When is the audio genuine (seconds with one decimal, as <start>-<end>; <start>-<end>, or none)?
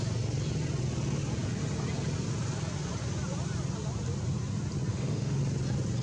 0.0-4.9; 5.4-6.0